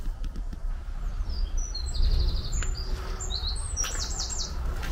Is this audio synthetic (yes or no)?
no